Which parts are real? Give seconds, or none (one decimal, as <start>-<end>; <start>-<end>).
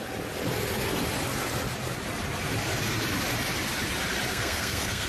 0.0-4.3